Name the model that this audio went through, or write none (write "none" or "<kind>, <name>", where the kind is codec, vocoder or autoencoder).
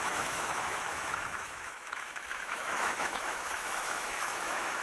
autoencoder, DAC-VAE